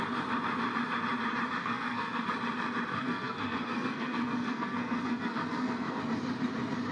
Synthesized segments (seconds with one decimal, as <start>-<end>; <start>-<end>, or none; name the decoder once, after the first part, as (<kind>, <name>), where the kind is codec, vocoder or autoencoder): 1.6-2.3 (codec, SNAC); 2.9-6.0